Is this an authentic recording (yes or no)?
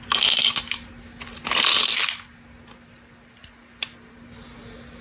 yes